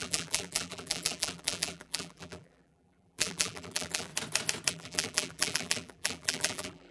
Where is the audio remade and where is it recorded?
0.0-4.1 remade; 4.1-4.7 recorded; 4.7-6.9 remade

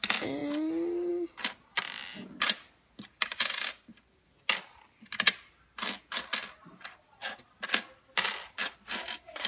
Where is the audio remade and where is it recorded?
0.0-9.5 recorded

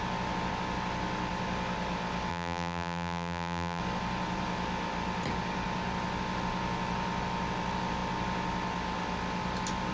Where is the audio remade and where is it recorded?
0.0-2.3 recorded; 2.3-3.8 remade; 3.8-9.9 recorded

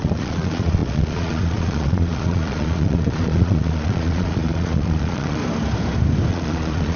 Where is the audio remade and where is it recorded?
0.0-5.4 remade; 5.4-6.3 recorded; 6.3-7.0 remade

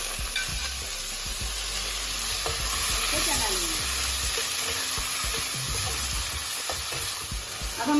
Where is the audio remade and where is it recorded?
0.0-8.0 recorded